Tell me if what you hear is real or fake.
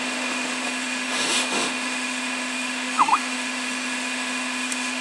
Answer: fake